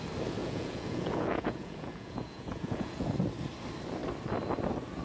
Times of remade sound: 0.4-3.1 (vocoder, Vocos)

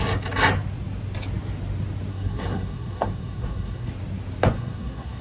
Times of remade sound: 2.1-3.9 (codec, SNAC); 4.5-5.2

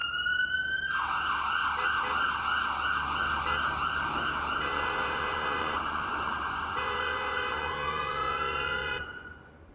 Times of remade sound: 4.6-9.7 (vocoder, Vocos)

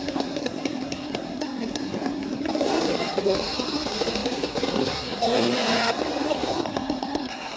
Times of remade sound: 0.0-7.6 (codec, SNAC)

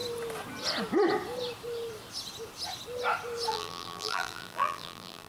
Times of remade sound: 3.5-5.3 (vocoder, BigVGAN v2)

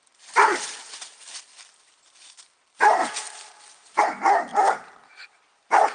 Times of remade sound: none